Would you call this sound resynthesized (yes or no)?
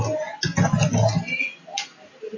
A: no